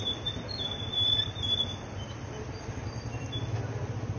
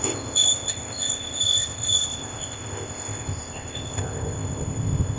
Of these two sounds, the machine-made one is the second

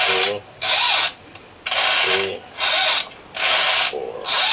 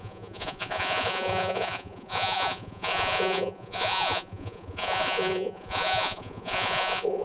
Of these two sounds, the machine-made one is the second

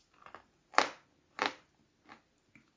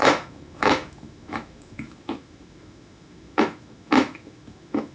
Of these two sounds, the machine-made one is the second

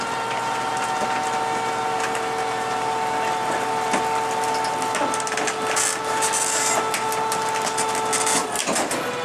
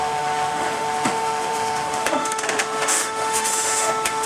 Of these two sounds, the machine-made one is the second